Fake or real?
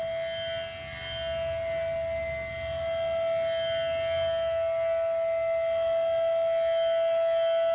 real